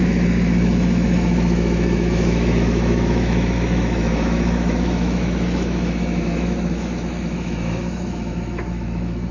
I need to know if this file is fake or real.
fake